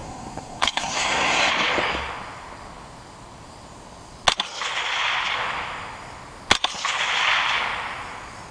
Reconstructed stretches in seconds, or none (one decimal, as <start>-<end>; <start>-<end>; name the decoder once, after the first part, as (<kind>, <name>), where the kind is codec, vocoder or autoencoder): 0.0-1.5 (codec, SNAC)